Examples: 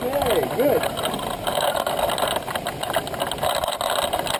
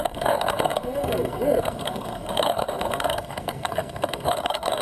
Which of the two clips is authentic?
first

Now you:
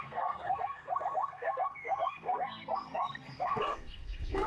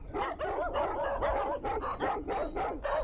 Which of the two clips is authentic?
second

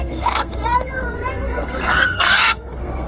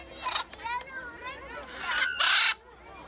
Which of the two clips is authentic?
second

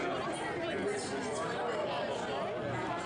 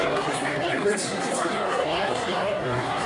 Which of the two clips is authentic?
first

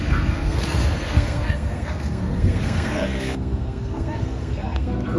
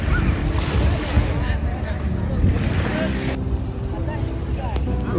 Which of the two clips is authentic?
second